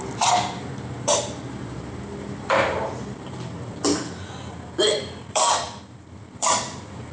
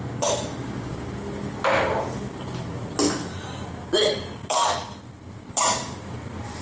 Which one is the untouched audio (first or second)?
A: second